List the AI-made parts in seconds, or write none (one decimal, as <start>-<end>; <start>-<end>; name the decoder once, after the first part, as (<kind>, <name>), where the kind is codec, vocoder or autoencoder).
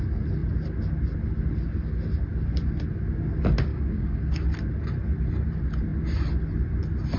3.7-4.4 (codec, DAC)